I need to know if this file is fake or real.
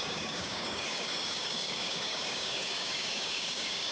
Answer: fake